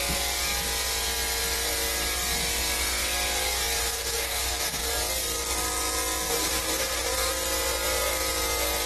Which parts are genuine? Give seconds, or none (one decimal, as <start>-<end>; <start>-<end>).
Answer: 0.0-3.8; 4.9-6.3; 7.3-8.9